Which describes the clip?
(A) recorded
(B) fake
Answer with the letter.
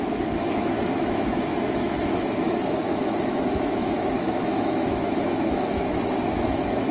B